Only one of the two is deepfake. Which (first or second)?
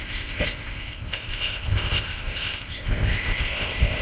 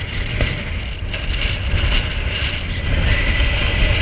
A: first